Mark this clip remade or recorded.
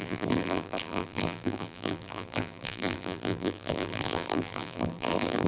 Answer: remade